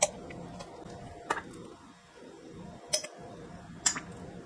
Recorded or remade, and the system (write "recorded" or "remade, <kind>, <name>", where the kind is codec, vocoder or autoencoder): recorded